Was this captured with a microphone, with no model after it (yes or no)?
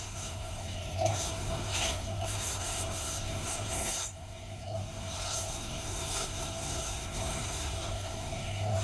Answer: no